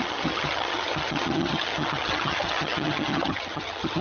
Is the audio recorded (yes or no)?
no